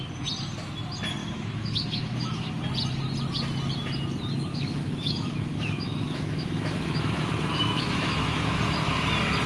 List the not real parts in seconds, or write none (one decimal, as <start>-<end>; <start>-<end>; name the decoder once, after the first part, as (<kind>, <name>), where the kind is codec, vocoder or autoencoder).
1.2-2.5 (autoencoder, DAC-VAE); 4.5-8.6